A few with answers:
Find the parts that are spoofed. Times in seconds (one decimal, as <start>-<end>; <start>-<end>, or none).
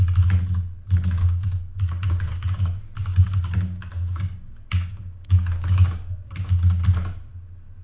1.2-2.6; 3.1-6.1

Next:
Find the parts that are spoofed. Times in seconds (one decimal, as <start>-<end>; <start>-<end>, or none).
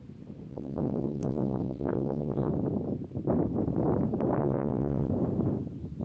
0.5-2.5; 4.4-5.1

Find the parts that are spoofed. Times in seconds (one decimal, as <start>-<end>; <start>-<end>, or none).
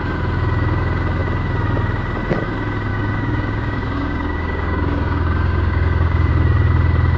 2.9-6.3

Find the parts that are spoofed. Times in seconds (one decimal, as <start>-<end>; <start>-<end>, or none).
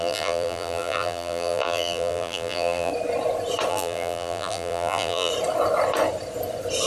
0.0-2.9; 3.7-5.3